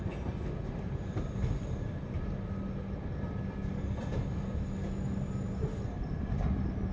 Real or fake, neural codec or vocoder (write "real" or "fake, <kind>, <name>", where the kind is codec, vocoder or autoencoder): real